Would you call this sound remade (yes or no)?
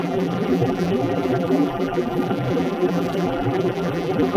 yes